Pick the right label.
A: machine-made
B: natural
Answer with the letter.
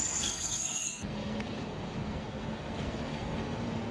A